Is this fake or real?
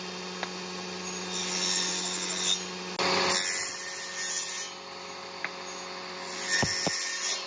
real